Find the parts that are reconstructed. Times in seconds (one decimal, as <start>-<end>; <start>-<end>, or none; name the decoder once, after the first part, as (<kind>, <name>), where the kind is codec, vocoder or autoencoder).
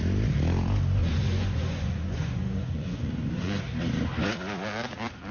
1.0-3.6 (vocoder, Vocos)